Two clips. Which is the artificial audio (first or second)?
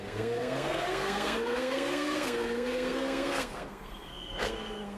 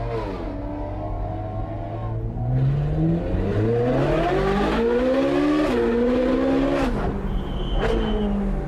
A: first